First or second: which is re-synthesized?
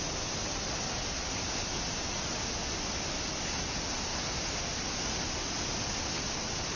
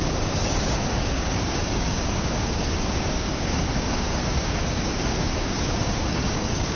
second